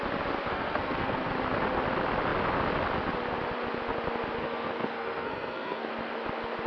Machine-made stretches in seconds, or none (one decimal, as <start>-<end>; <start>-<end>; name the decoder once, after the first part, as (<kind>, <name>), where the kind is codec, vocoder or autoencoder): 0.5-1.3 (codec, SNAC); 4.4-5.9